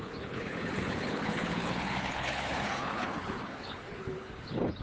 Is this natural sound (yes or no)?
no